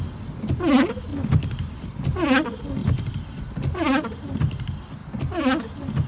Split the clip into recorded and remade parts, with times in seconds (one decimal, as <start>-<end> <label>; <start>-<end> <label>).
0.0-1.1 recorded; 1.1-2.0 remade; 2.0-2.8 recorded; 2.8-4.4 remade; 4.4-6.1 recorded